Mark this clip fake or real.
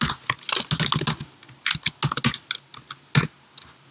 real